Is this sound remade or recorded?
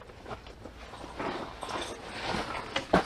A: recorded